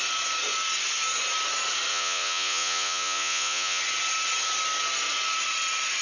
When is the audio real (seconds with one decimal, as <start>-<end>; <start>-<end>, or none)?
0.0-1.9; 3.8-6.0